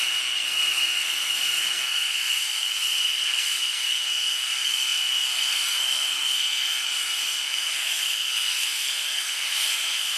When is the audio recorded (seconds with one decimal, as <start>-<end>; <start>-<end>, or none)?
none